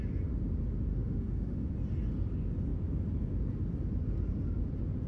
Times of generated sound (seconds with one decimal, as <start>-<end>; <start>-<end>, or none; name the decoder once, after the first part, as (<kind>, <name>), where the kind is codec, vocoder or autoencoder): 0.9-1.7 (autoencoder, DAC-VAE)